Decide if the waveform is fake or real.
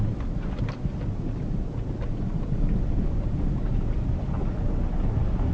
real